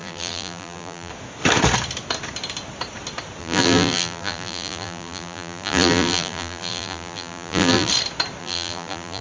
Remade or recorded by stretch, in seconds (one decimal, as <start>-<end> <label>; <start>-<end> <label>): 0.0-1.1 remade; 1.1-3.4 recorded; 3.4-7.9 remade; 7.9-8.4 recorded; 8.4-9.2 remade